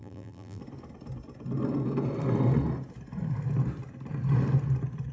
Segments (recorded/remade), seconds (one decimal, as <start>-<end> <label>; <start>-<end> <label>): 0.0-0.6 remade; 0.6-5.1 recorded